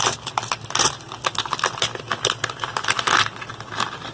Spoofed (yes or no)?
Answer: no